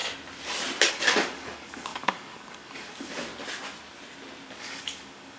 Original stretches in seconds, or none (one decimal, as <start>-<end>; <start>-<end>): 0.0-0.9; 3.3-4.5